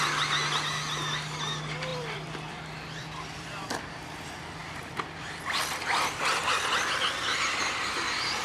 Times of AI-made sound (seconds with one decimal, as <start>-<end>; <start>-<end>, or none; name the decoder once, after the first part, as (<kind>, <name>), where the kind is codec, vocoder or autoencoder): 1.9-3.8 (vocoder, BigVGAN v2)